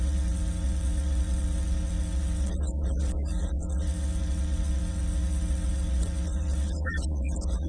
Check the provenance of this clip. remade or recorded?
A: remade